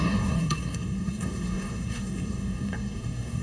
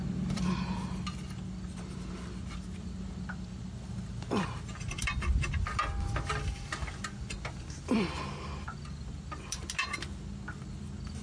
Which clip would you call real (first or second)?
second